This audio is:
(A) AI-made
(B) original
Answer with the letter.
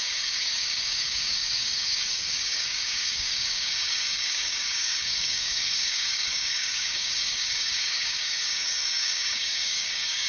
A